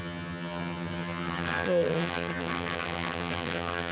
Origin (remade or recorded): remade